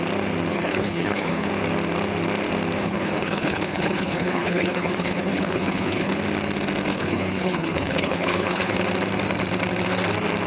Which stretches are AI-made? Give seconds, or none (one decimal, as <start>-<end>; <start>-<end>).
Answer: 0.5-1.5; 2.8-6.1; 6.9-8.8